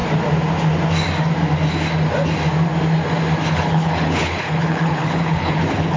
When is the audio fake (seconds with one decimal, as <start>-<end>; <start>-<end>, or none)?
3.5-6.0